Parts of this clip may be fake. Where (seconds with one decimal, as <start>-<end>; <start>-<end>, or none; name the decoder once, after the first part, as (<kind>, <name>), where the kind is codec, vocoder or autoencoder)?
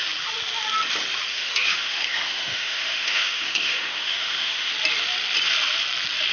1.3-4.7 (autoencoder, DAC-VAE)